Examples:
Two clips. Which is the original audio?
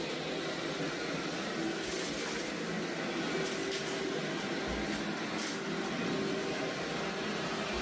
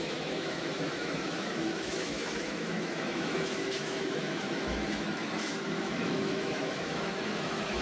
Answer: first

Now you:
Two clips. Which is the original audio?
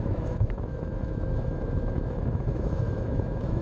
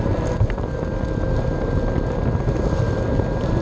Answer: second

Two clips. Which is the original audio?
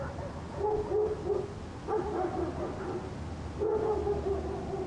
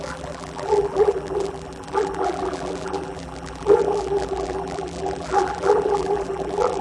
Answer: first